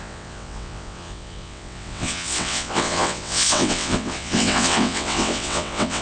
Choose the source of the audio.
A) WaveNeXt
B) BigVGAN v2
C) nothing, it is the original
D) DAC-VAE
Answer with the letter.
A